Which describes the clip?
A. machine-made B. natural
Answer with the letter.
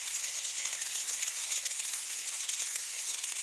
A